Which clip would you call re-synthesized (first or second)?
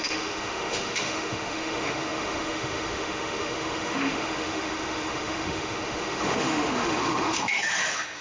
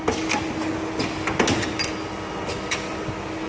first